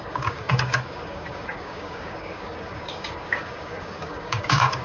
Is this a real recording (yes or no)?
no